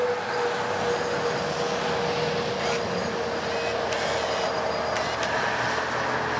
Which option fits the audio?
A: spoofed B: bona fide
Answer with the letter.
B